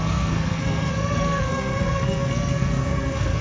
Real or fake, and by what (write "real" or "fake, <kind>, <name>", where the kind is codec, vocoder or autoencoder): fake, codec, SNAC